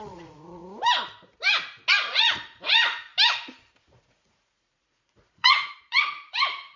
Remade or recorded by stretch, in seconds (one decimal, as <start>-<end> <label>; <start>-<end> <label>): 0.0-0.6 remade; 0.6-1.9 recorded; 1.9-3.1 remade; 3.1-3.8 recorded; 3.8-6.8 remade